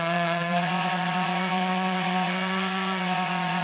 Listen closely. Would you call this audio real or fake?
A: fake